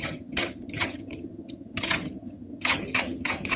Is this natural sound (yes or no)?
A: no